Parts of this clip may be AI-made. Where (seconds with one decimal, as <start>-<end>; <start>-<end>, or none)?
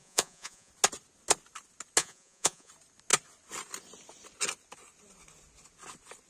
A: 0.0-0.7; 2.0-2.7